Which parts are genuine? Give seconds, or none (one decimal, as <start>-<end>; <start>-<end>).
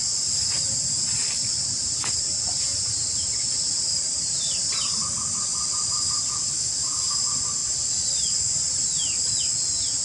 0.0-2.7; 5.0-7.6; 9.2-10.0